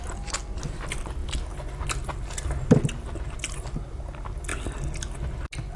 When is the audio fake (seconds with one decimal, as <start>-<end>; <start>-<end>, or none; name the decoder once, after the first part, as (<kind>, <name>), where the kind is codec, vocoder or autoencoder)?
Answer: none

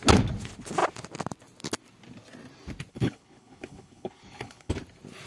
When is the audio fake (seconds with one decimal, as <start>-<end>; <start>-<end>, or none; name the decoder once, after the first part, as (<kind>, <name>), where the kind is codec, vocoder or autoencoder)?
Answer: 2.9-4.7 (codec, HILCodec)

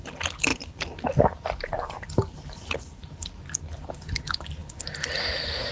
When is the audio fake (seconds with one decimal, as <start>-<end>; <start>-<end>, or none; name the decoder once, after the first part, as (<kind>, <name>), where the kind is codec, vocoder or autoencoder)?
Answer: none

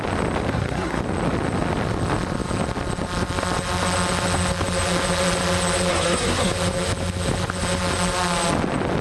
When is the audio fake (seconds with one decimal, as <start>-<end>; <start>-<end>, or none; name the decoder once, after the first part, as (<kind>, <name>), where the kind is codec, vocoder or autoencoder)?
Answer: 0.5-1.0 (codec, SNAC); 5.9-6.5

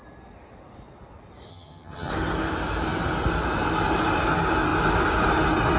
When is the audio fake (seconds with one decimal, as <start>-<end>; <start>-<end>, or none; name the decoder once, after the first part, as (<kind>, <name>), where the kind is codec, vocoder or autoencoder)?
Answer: 1.5-2.1 (vocoder, HiFi-GAN)